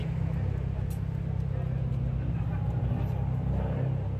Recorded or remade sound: recorded